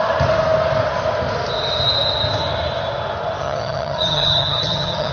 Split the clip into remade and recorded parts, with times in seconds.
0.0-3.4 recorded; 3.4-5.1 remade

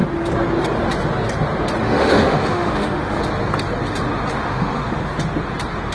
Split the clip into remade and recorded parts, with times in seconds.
0.0-1.8 recorded; 1.8-3.2 remade; 3.2-4.3 recorded; 4.3-5.1 remade; 5.1-5.9 recorded

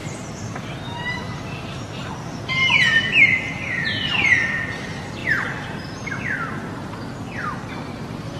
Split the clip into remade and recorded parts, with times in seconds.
0.0-5.2 remade; 5.2-7.7 recorded; 7.7-8.4 remade

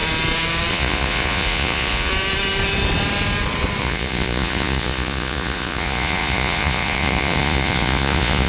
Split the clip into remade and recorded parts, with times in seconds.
0.0-0.7 recorded; 0.7-2.1 remade; 2.1-3.8 recorded; 3.8-8.5 remade

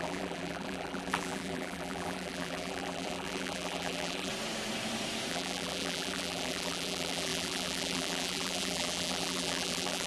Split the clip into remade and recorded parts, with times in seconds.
0.0-4.3 remade; 4.3-5.3 recorded; 5.3-10.1 remade